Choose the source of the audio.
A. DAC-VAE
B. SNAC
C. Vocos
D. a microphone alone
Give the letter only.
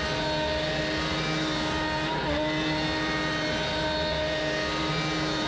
D